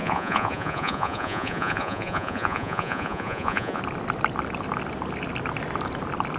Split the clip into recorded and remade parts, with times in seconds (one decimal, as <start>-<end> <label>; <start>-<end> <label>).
0.0-3.8 remade; 3.8-6.4 recorded